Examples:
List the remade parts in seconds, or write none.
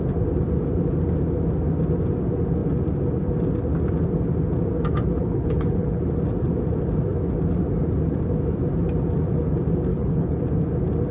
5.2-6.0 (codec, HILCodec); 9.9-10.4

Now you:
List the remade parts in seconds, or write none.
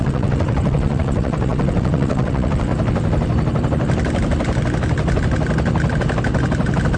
0.0-2.7 (vocoder, WaveNeXt)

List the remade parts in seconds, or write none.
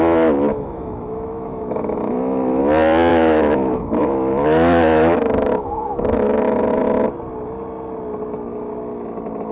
0.5-2.6 (autoencoder, DAC-VAE); 3.1-6.8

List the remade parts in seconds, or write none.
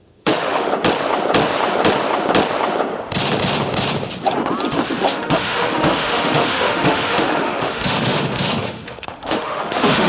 0.0-0.7 (autoencoder, DAC-VAE); 5.0-10.1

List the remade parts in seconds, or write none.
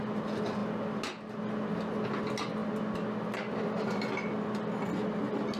none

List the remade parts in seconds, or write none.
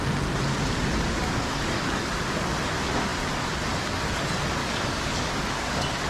1.2-2.5 (codec, DAC); 4.6-6.1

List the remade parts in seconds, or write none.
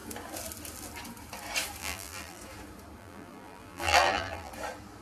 1.8-2.4 (vocoder, BigVGAN v2); 3.0-4.5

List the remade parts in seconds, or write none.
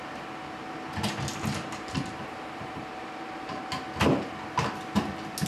1.3-3.7 (vocoder, BigVGAN v2)